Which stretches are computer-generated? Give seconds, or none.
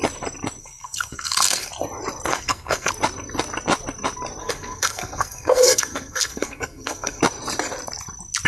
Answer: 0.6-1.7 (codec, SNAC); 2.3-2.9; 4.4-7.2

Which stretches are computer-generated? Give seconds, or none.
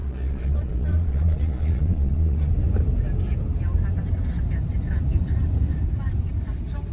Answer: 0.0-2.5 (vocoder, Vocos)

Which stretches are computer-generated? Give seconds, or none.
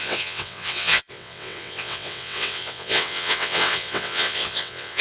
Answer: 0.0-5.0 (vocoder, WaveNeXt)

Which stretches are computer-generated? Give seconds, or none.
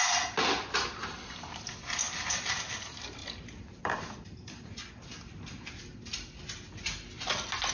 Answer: 1.0-2.5 (vocoder, BigVGAN v2); 3.2-6.1